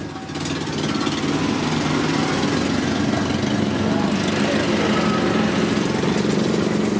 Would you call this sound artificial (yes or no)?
no